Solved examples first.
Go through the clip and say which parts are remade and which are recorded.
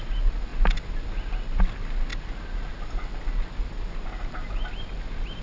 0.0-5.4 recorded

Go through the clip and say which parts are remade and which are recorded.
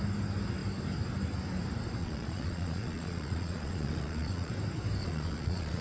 0.0-2.0 recorded; 2.0-4.5 remade; 4.5-5.0 recorded; 5.0-5.8 remade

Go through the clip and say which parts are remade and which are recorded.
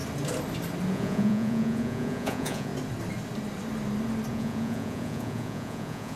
0.0-0.9 recorded; 0.9-2.7 remade; 2.7-4.3 recorded; 4.3-6.2 remade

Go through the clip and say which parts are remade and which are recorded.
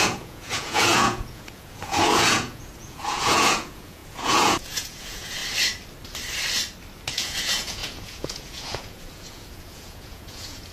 0.0-5.4 remade; 5.4-7.1 recorded; 7.1-10.7 remade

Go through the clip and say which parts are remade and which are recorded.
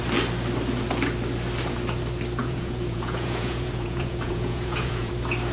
0.0-2.4 recorded; 2.4-5.1 remade; 5.1-5.5 recorded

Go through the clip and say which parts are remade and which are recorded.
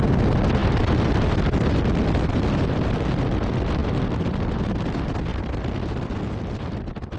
0.0-7.2 recorded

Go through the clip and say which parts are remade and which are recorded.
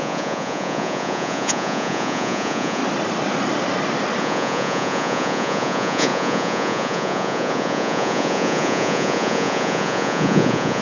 0.0-2.8 remade; 2.8-4.2 recorded; 4.2-10.8 remade